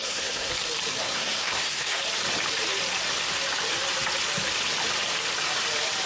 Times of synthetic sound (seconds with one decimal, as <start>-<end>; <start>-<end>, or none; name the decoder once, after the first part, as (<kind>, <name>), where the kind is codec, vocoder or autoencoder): 0.0-0.5 (codec, SNAC); 1.0-2.0